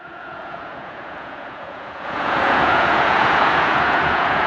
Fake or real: fake